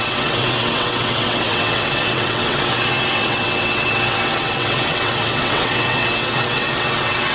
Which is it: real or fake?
fake